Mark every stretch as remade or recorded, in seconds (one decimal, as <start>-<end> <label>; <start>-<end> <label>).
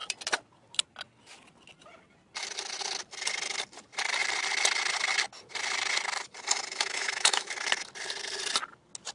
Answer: 0.0-6.7 recorded; 6.7-7.5 remade; 7.5-9.1 recorded